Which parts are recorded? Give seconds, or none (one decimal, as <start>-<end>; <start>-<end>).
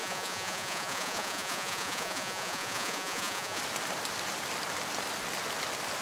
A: 3.6-6.0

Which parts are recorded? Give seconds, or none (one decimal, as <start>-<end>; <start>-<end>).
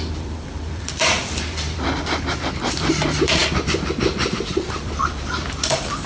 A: none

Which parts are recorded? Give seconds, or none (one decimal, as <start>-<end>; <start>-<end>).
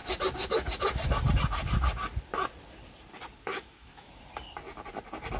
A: 0.0-3.5; 4.1-5.4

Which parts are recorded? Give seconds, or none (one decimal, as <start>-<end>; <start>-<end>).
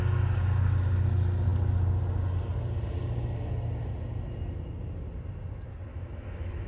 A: 0.0-5.9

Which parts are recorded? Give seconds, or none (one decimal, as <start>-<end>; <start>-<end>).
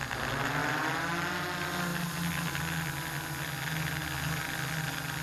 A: 0.0-5.2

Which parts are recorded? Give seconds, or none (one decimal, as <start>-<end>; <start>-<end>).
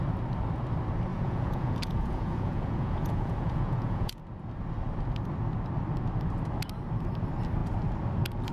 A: 0.0-1.1; 4.2-8.5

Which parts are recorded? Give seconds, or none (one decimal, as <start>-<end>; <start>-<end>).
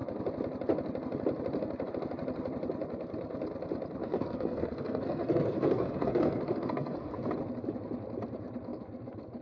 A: 0.0-4.0; 7.3-9.4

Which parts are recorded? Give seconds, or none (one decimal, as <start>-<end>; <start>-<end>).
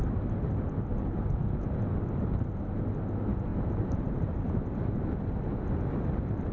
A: 0.0-3.5; 4.6-6.5